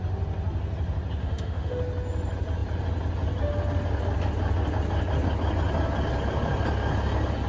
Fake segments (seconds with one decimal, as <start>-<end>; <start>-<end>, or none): 1.2-1.8